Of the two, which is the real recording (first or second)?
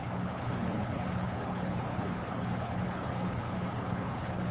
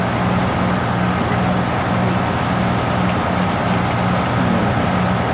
second